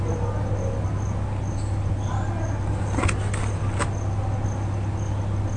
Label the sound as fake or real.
real